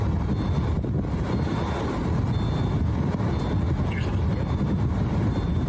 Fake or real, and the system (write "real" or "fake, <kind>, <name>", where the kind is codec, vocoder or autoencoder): real